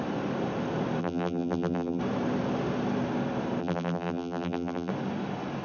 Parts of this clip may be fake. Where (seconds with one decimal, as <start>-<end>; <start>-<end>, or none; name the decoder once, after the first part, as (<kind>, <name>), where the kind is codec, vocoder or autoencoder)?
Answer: 1.0-2.0 (vocoder, BigVGAN v2); 3.6-4.9